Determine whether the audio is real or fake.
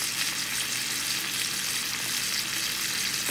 real